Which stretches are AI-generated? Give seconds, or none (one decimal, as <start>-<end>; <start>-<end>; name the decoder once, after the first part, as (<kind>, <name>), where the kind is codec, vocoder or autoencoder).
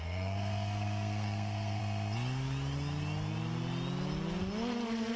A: 0.0-1.8 (codec, SNAC)